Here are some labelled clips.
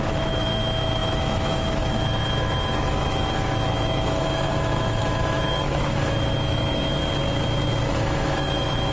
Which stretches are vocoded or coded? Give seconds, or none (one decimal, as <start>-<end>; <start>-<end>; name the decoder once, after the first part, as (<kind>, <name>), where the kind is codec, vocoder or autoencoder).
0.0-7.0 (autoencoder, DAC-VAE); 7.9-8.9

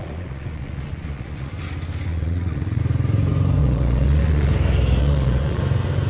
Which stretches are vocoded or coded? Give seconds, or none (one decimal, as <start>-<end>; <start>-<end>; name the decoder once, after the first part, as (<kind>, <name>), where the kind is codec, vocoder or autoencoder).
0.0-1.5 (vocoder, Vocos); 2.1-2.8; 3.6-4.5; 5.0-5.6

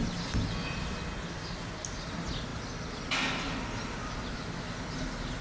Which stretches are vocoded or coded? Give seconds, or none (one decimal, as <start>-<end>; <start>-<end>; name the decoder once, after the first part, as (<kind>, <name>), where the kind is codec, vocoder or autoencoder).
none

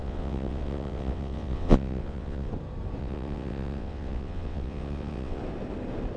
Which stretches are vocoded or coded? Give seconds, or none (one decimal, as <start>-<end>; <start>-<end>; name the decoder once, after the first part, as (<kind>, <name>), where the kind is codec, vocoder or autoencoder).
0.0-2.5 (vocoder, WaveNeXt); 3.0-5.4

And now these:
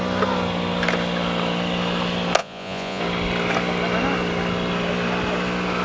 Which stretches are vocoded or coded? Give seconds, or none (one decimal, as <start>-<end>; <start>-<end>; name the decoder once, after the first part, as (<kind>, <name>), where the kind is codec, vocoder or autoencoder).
2.4-3.0 (vocoder, Vocos)